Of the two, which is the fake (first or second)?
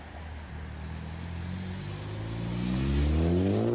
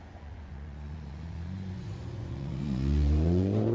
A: second